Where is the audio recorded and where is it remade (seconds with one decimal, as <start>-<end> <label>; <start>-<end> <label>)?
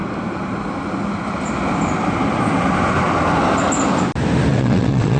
0.0-4.5 recorded; 4.5-5.2 remade